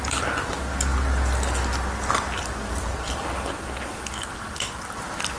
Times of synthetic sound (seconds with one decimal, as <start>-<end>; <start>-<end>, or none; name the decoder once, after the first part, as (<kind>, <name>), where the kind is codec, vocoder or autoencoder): none